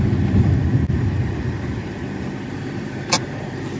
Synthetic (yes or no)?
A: no